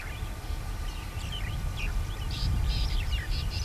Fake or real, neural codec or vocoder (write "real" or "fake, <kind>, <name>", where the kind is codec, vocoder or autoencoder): fake, vocoder, BigVGAN v2